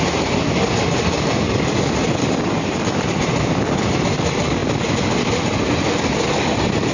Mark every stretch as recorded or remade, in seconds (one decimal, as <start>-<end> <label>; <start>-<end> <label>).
0.0-6.9 recorded